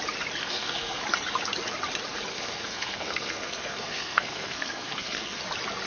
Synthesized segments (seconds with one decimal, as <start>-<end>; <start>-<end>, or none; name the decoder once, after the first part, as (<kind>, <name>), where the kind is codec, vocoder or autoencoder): 0.4-1.0 (codec, SNAC); 2.3-5.4